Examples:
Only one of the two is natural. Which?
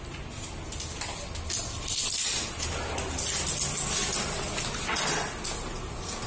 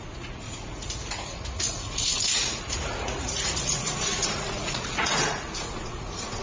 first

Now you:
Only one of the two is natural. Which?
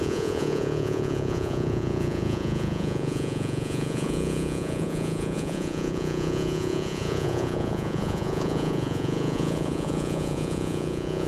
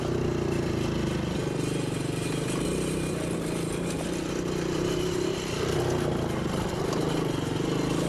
second